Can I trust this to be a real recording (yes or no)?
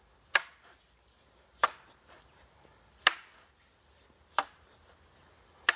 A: yes